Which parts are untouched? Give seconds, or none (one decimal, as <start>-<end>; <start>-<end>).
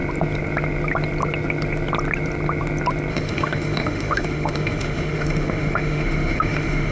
0.0-3.1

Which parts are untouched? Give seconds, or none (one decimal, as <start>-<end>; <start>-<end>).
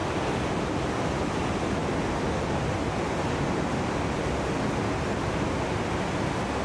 0.0-6.6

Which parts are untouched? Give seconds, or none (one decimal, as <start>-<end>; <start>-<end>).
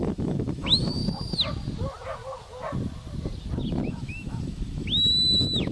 1.0-3.9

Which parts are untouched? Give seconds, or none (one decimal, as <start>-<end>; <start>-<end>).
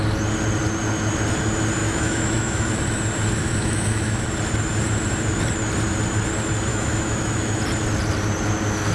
0.0-1.8; 2.7-3.4; 4.3-6.7; 7.6-8.9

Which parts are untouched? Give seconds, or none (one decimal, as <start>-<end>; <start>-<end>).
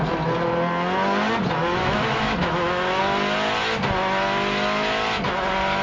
0.0-1.8; 3.0-5.8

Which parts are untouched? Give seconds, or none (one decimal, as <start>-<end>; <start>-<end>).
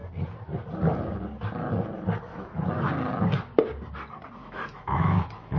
0.0-2.3; 2.9-4.4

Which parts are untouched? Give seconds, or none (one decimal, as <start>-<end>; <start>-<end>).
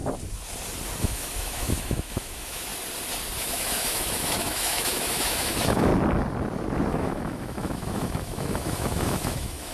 0.0-1.0; 2.7-3.4; 5.9-6.9